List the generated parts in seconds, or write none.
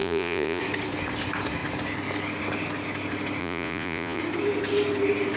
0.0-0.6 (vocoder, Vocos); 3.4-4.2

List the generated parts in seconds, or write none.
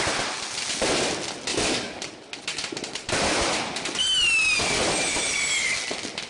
none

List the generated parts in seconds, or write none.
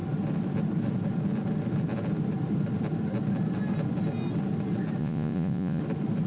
5.0-5.8 (vocoder, Vocos)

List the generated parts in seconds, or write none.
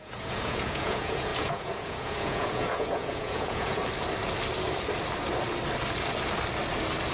0.0-3.8 (vocoder, Vocos)